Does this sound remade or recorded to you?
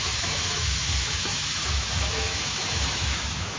remade